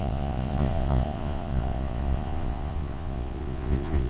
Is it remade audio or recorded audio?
remade